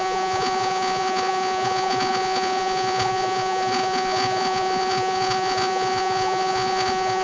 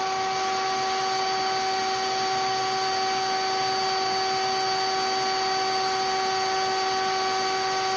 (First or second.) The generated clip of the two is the first